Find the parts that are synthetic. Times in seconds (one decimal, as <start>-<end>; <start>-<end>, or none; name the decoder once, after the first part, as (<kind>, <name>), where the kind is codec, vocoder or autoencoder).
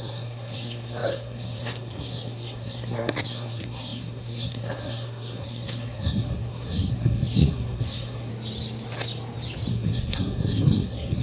0.0-8.3 (codec, SNAC); 9.7-11.2